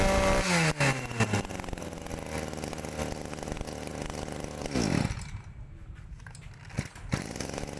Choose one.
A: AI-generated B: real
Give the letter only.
B